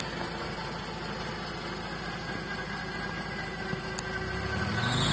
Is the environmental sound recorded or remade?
recorded